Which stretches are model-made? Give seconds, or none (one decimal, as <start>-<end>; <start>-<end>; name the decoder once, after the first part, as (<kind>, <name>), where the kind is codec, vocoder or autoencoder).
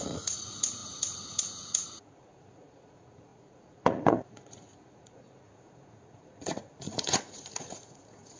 0.0-8.4 (vocoder, Vocos)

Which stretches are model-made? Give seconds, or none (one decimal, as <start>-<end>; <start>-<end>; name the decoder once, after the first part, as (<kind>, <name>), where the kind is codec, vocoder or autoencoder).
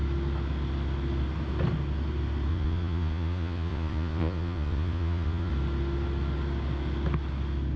2.5-5.5 (vocoder, Vocos)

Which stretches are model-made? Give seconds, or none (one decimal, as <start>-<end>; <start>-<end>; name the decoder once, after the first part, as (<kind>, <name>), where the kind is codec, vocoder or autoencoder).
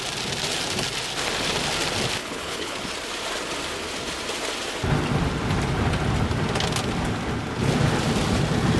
2.2-2.8 (codec, HILCodec)